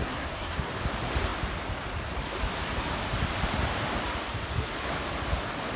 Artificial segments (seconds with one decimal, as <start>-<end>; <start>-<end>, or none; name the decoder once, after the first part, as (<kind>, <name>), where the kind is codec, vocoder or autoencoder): 0.0-0.7 (codec, SNAC)